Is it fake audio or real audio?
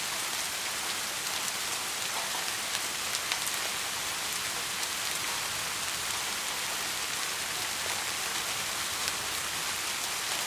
real